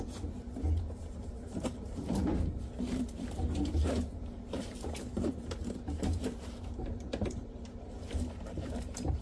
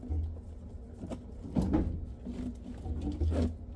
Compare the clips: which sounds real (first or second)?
second